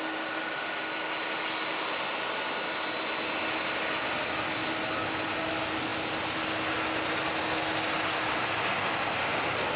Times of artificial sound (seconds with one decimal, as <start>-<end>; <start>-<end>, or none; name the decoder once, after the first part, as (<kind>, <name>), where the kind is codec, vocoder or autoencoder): none